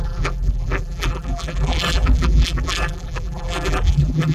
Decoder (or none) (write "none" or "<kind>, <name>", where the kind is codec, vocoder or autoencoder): vocoder, BigVGAN v2